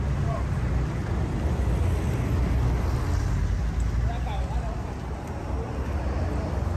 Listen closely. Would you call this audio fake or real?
real